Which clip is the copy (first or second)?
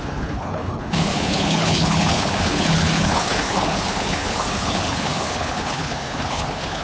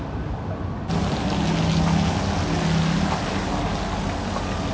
first